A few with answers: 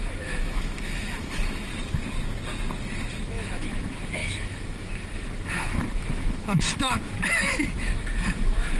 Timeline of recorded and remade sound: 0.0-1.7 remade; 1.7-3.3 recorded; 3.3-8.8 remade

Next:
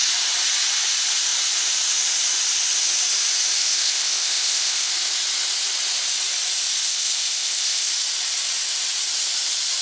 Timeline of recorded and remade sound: 0.0-3.6 recorded; 3.6-4.9 remade; 4.9-6.9 recorded; 6.9-7.9 remade; 7.9-9.8 recorded